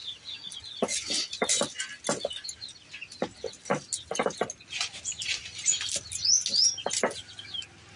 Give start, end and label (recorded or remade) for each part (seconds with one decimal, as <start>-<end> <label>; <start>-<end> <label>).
0.0-8.0 recorded